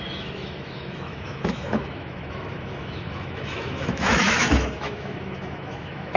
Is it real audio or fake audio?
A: fake